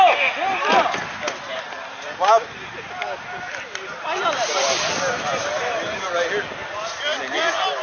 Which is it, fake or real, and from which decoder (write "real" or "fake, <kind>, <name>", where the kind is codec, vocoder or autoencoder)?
real